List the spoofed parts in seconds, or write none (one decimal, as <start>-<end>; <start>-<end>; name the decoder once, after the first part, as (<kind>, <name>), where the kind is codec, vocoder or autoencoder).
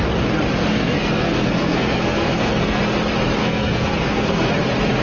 0.6-2.8 (codec, SNAC); 3.4-4.5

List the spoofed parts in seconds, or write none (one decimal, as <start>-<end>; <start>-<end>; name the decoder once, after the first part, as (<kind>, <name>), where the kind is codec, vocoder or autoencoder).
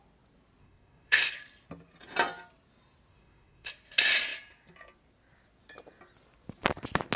0.6-1.3 (codec, SNAC); 3.1-3.7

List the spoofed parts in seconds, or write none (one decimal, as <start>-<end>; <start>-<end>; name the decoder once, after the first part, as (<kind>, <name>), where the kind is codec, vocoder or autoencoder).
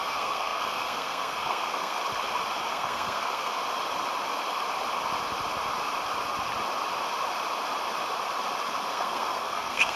0.0-2.0 (codec, SNAC); 2.7-3.6; 8.9-10.0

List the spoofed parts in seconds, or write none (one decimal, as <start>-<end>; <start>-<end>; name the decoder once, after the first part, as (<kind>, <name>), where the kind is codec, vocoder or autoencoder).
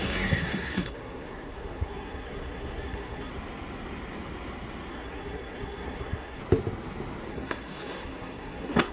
0.0-3.3 (codec, SNAC); 4.9-6.4; 7.3-8.9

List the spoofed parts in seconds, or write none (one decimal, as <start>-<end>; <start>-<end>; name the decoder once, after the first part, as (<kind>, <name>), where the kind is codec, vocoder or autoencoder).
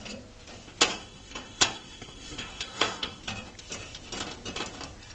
0.9-3.2 (codec, SNAC)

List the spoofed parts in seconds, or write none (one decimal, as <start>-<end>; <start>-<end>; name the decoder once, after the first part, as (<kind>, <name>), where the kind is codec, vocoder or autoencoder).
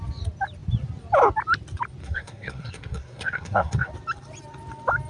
2.0-3.9 (codec, SNAC)